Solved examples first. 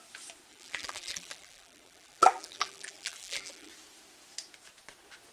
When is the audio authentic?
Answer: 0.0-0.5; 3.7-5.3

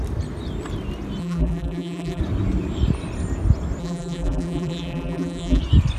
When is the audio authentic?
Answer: 0.0-1.2; 2.2-3.8; 5.6-6.0

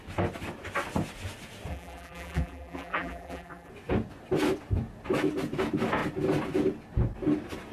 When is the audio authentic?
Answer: 0.0-1.7; 3.7-7.7

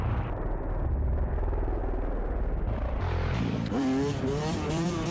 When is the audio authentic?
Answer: 1.8-2.6

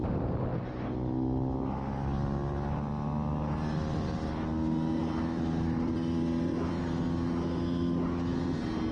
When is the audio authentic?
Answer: 0.0-5.0; 6.8-8.9

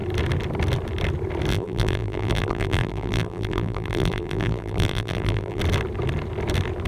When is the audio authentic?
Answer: 0.0-1.5; 5.6-6.9

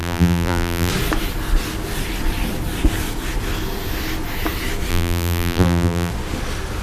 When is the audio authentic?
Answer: 0.9-4.9; 6.1-6.8

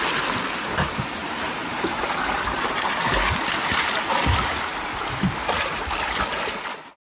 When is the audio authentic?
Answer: 0.0-1.2; 2.0-7.2